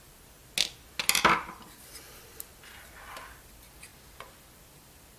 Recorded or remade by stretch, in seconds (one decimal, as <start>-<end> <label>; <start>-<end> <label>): 0.0-0.4 remade; 0.4-3.1 recorded; 3.1-3.9 remade; 3.9-4.5 recorded; 4.5-5.2 remade